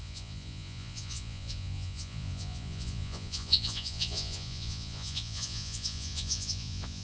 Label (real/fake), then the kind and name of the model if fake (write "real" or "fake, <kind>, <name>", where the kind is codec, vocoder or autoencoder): fake, vocoder, Vocos